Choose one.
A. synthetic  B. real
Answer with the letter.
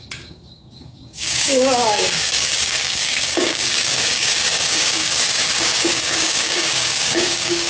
A